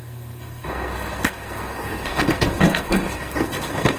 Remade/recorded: remade